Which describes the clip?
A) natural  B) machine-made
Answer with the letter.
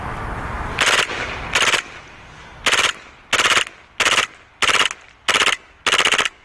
A